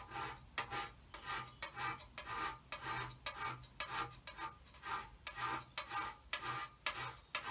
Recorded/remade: recorded